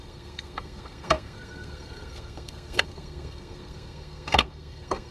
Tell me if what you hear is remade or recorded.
remade